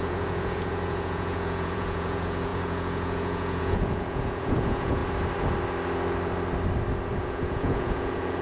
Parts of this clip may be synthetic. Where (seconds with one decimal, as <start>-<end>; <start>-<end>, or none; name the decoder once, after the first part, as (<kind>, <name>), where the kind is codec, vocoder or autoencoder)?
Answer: 0.0-5.0 (vocoder, Vocos); 7.2-8.4